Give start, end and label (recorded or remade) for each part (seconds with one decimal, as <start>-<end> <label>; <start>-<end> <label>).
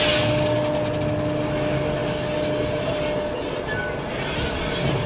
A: 0.0-5.1 recorded